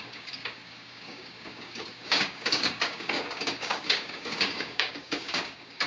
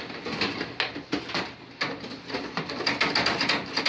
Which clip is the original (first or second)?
second